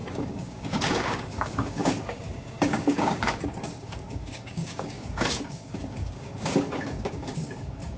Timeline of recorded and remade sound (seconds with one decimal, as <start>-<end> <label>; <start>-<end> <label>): 0.0-8.0 remade